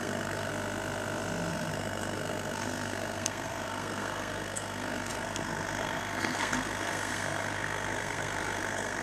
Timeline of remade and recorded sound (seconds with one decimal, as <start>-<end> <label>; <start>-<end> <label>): 0.0-0.5 remade; 0.5-1.5 recorded; 1.5-9.0 remade